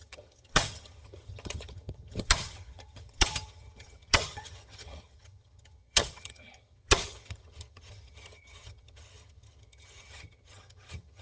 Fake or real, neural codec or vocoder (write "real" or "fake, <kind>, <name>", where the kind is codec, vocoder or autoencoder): fake, vocoder, HiFi-GAN